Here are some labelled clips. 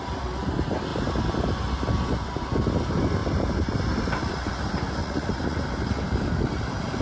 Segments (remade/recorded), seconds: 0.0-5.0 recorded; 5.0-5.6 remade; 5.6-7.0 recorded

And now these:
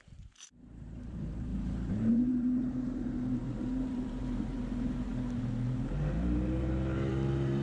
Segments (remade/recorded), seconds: 0.0-7.6 remade

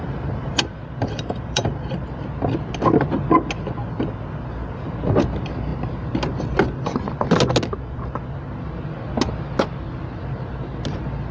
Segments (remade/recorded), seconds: 0.0-2.2 remade; 2.2-11.3 recorded

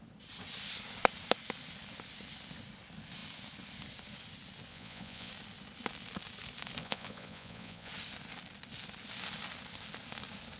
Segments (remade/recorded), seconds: 0.0-4.7 recorded; 4.7-5.3 remade; 5.3-6.8 recorded; 6.8-7.9 remade; 7.9-10.6 recorded